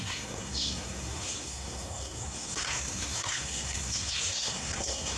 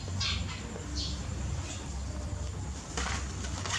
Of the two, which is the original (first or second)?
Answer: second